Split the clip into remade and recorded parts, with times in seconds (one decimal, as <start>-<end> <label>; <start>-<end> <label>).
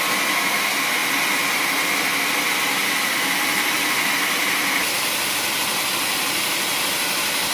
0.0-7.5 recorded